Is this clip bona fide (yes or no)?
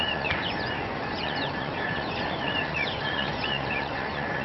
no